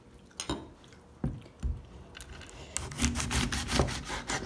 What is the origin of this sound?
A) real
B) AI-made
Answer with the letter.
A